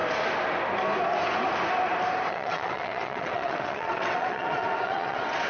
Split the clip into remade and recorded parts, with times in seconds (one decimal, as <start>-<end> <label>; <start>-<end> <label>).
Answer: 0.0-2.3 recorded; 2.3-5.5 remade